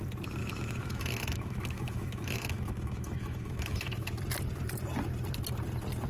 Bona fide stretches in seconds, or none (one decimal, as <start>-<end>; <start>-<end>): 0.0-0.4; 4.1-6.1